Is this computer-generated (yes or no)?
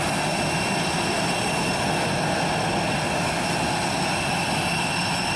no